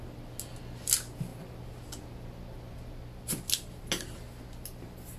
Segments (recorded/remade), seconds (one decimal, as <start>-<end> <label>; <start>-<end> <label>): 0.0-5.2 recorded